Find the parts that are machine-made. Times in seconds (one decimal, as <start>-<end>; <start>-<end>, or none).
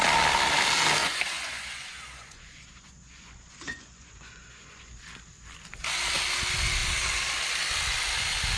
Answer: 1.0-4.9